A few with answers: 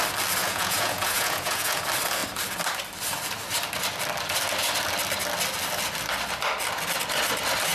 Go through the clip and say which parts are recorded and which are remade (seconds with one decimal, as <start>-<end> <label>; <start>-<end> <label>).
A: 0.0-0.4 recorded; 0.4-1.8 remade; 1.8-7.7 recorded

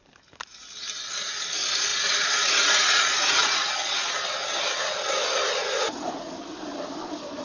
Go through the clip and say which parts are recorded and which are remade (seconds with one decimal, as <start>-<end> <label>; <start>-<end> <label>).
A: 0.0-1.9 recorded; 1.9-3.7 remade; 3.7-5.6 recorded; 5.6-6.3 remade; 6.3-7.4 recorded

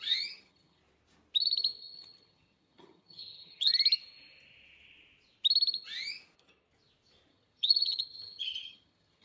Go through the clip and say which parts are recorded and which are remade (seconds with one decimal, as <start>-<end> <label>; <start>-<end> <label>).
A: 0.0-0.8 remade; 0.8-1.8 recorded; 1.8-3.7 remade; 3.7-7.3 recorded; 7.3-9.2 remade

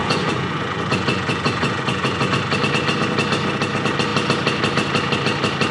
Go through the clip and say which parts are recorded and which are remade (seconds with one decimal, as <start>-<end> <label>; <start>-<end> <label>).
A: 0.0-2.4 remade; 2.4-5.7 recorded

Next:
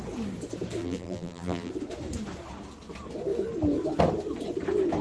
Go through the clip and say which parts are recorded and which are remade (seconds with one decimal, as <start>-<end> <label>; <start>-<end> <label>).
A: 0.0-0.8 recorded; 0.8-1.7 remade; 1.7-5.0 recorded